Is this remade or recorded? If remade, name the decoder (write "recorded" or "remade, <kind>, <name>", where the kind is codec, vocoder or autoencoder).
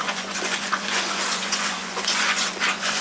remade, vocoder, Vocos